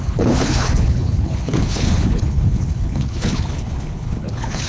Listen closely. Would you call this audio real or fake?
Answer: fake